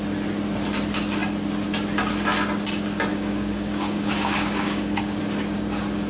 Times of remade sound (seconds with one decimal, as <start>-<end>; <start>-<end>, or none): 3.1-5.2